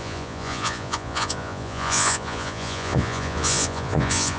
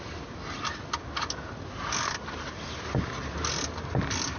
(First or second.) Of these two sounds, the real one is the second